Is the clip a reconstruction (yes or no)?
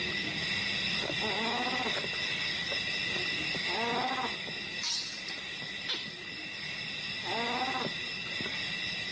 no